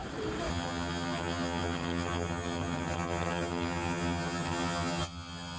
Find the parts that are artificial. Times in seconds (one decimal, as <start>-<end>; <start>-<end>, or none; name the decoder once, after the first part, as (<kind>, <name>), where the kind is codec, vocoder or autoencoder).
0.5-5.6 (vocoder, HiFi-GAN)